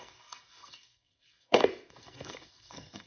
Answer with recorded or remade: remade